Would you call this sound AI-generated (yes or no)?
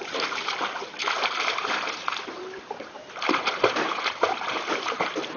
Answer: yes